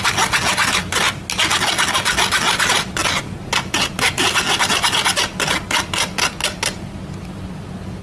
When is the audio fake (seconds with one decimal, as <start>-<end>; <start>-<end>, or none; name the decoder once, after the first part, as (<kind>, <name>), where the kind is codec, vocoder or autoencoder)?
none